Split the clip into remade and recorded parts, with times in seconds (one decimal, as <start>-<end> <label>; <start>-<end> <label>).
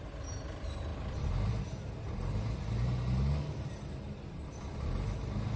0.0-5.6 recorded